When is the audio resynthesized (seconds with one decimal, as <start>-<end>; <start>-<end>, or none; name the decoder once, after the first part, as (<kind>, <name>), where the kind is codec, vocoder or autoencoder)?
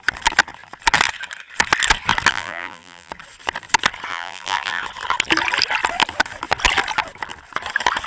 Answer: 2.3-3.1 (vocoder, BigVGAN v2); 4.1-4.8